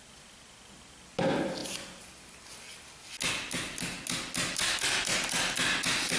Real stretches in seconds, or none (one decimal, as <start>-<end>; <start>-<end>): 0.0-6.2